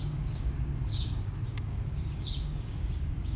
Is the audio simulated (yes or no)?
yes